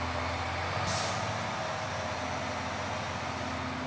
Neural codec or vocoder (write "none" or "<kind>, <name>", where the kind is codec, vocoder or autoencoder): none